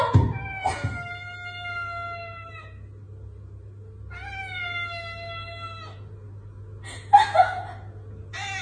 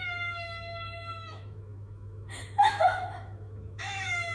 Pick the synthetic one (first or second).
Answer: second